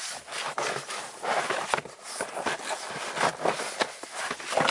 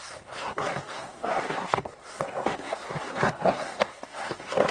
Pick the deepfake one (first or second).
second